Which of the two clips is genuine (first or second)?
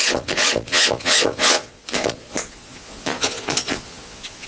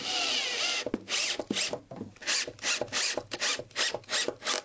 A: second